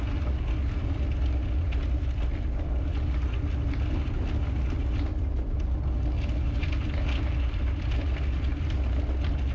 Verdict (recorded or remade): recorded